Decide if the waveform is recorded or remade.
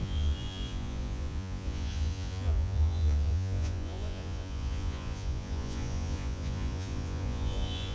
remade